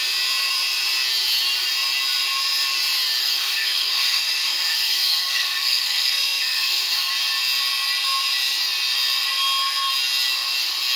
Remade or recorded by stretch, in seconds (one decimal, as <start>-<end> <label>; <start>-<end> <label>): 0.0-3.2 recorded; 3.2-7.1 remade; 7.1-11.0 recorded